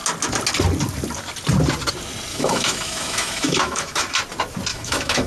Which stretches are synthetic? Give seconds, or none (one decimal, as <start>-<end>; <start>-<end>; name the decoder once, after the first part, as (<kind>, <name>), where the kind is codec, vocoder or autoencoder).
2.3-4.0 (autoencoder, DAC-VAE); 4.7-5.3